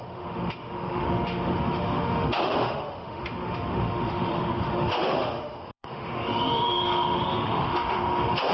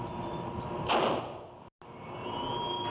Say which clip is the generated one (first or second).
first